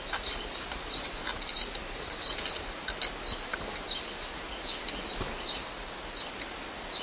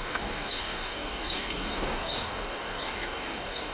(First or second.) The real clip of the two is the first